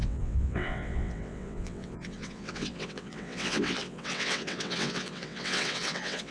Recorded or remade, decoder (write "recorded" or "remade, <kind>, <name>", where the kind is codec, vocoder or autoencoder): remade, vocoder, WaveNeXt